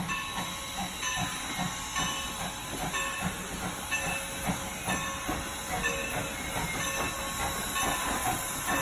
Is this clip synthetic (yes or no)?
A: no